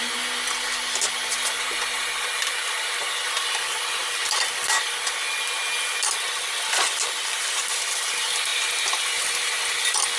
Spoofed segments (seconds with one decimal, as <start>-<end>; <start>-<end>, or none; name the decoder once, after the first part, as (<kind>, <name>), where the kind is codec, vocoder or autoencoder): none